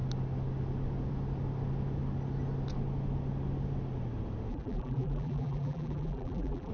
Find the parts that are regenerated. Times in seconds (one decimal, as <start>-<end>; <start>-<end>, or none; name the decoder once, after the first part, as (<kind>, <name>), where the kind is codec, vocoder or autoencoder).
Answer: 4.5-6.7 (vocoder, BigVGAN v2)